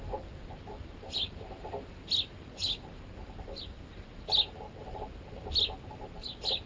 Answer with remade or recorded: recorded